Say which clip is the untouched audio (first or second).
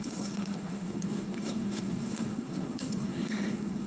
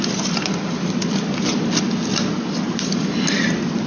second